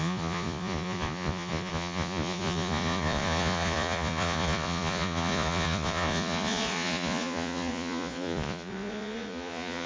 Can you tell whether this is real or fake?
fake